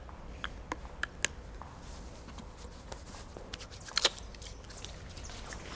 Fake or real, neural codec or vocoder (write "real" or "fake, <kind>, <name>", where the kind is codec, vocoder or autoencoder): real